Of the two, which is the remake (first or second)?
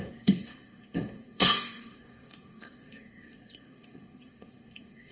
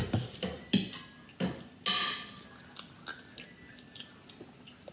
first